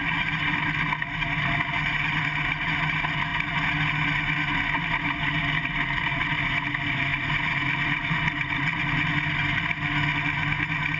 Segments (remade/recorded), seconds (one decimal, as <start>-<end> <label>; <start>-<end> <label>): 0.0-11.0 recorded